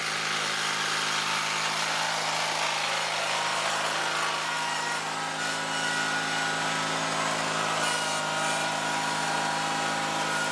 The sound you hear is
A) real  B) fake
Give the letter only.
A